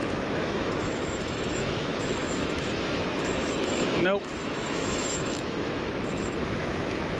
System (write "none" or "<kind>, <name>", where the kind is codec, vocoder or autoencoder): autoencoder, DAC-VAE